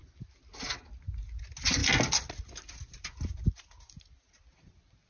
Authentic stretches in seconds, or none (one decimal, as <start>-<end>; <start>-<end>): 0.0-5.1